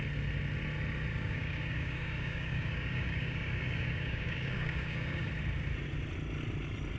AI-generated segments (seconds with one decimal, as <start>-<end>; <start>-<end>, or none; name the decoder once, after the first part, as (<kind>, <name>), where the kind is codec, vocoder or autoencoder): 1.1-5.3 (codec, DAC)

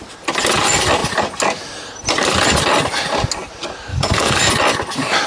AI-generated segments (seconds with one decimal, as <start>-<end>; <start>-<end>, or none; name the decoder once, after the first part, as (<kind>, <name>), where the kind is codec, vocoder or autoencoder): 3.9-4.5 (codec, DAC)